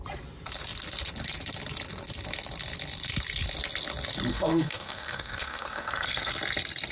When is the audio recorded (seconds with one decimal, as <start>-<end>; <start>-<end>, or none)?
0.0-4.3; 6.3-6.9